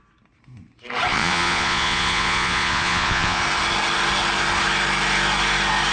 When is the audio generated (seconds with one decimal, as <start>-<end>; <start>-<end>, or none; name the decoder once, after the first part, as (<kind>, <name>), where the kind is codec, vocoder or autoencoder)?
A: 1.1-3.4 (vocoder, Vocos)